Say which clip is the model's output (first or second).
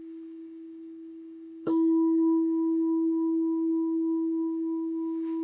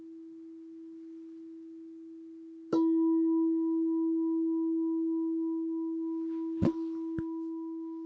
first